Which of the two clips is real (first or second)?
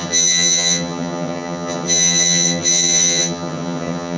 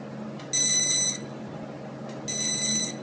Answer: second